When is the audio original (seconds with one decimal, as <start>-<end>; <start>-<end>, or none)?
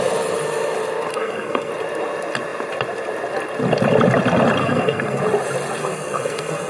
0.0-1.1; 1.7-4.6; 5.2-5.8